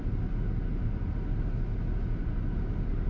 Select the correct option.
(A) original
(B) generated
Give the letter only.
A